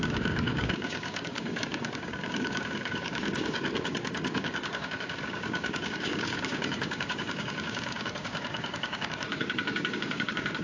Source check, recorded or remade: remade